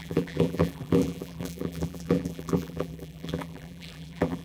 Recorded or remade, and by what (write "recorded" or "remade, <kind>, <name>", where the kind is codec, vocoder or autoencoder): remade, vocoder, BigVGAN v2